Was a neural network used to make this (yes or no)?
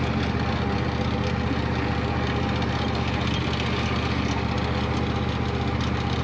no